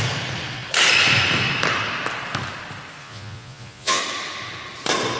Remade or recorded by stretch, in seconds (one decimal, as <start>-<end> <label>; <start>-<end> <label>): 0.0-3.0 recorded; 3.0-4.0 remade; 4.0-5.2 recorded